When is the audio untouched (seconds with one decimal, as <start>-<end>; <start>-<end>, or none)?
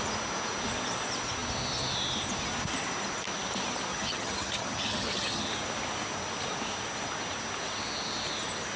0.0-3.9; 5.5-8.8